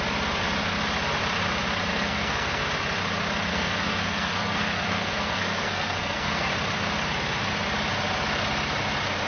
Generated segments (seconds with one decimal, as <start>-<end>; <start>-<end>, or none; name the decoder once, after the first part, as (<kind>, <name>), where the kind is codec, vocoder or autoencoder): 1.9-2.6 (codec, SNAC); 3.5-6.5